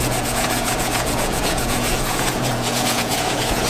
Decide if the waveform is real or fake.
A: fake